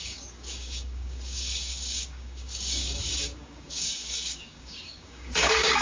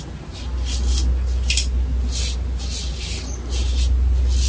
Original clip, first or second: second